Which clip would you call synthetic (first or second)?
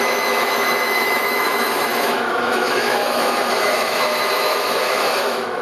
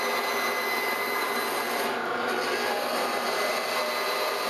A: first